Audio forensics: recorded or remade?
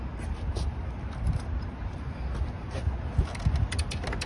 recorded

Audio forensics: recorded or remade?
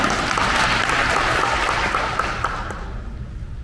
recorded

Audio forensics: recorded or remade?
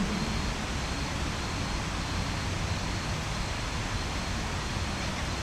recorded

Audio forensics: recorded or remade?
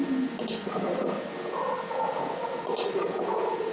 recorded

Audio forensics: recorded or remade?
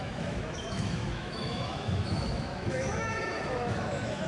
remade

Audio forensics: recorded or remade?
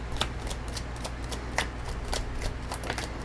recorded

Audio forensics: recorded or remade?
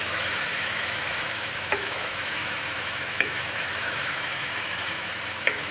remade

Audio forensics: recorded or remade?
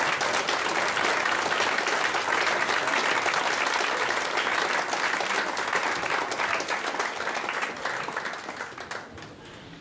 recorded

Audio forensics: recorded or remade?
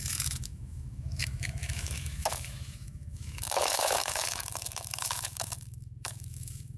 remade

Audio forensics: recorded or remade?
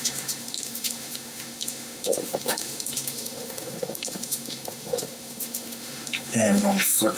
remade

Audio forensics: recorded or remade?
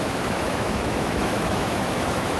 remade